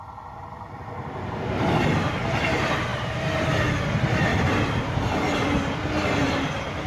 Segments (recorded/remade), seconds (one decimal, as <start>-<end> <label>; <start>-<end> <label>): 0.0-4.3 recorded; 4.3-4.9 remade; 4.9-6.9 recorded